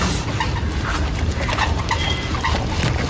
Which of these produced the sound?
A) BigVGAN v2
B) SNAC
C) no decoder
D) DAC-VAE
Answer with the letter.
C